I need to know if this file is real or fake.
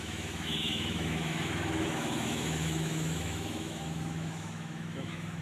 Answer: fake